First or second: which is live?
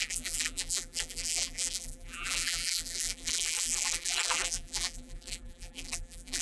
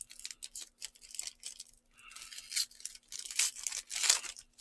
second